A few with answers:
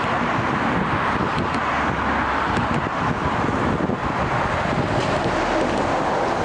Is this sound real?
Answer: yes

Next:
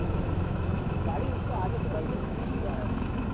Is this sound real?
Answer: no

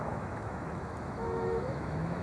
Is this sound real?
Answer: no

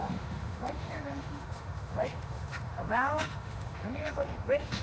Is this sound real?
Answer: no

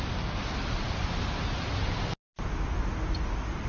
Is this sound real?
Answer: yes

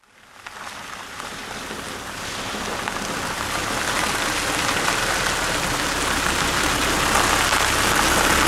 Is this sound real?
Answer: yes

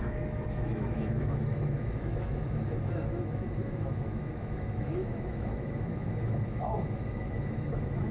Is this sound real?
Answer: no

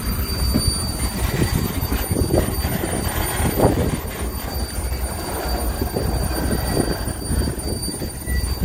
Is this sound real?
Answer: yes